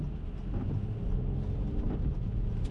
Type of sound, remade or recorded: recorded